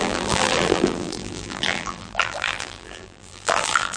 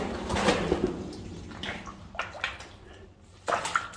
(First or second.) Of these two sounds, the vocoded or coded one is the first